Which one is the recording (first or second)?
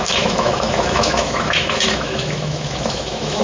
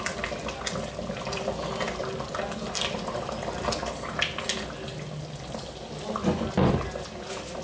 second